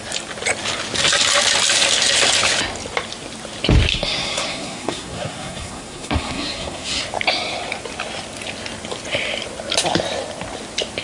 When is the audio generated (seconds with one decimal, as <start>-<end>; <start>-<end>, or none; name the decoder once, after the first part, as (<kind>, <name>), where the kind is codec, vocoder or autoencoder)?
3.9-7.0 (codec, SNAC)